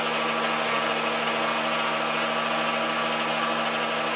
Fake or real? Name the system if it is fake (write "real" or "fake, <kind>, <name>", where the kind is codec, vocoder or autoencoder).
real